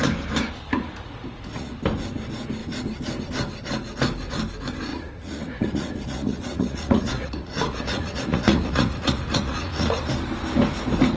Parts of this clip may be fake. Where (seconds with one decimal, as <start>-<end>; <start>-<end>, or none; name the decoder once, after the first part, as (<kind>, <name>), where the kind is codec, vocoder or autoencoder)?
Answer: 0.7-1.8 (vocoder, Vocos); 4.9-9.9